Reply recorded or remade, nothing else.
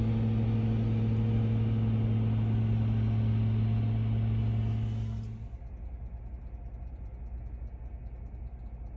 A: recorded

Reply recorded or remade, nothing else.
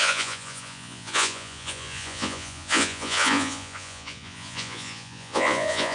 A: remade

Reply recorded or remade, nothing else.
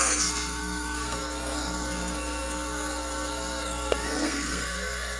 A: remade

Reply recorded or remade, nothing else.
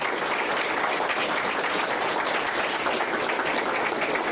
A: recorded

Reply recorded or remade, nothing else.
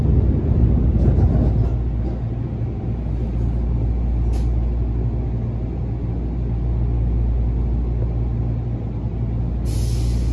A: recorded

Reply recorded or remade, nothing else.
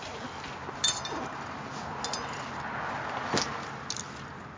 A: recorded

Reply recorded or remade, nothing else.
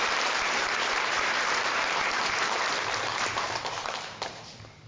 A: remade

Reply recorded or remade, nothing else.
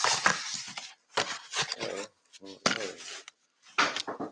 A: remade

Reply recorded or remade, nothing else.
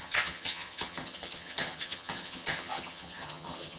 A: remade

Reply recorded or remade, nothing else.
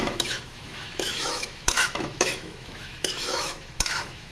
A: remade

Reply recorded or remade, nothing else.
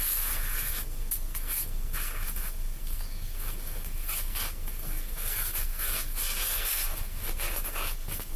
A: remade